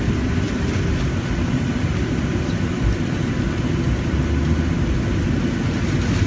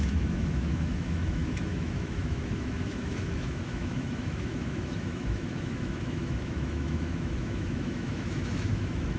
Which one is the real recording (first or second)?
first